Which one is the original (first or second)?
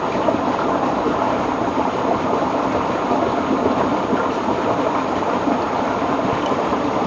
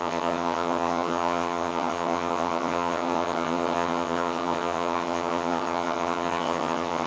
first